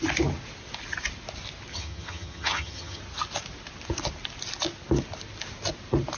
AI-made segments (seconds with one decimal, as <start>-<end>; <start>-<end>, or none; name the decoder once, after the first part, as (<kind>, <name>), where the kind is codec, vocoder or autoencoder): 1.7-3.0 (vocoder, HiFi-GAN)